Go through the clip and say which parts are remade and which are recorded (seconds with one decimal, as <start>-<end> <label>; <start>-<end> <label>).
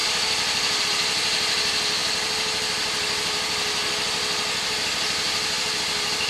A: 0.0-2.0 recorded; 2.0-5.8 remade; 5.8-6.3 recorded